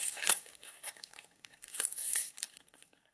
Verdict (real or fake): fake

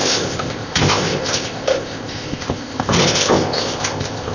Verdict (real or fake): fake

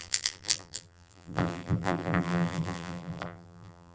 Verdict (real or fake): fake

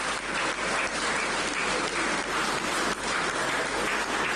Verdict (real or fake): fake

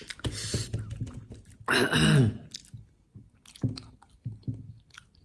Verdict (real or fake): real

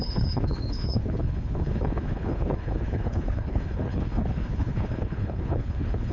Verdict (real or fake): fake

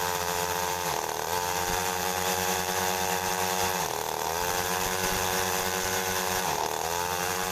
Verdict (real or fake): fake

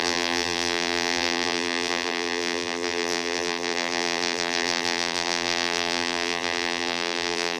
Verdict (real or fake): fake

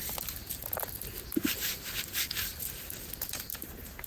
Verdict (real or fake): fake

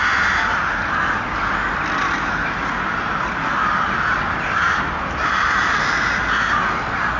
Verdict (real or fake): real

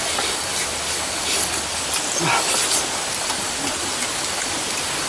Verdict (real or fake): real